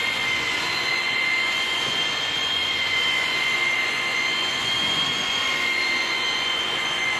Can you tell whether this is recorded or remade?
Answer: remade